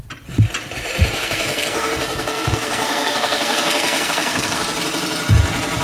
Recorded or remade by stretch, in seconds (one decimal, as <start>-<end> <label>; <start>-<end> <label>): 0.0-1.1 recorded; 1.1-4.6 remade; 4.6-5.8 recorded